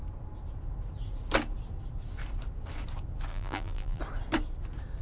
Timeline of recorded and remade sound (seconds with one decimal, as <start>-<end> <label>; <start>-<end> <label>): 0.0-3.3 recorded; 3.3-4.0 remade; 4.0-5.0 recorded